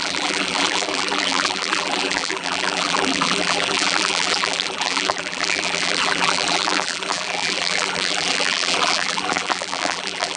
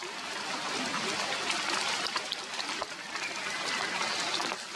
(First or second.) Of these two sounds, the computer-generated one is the first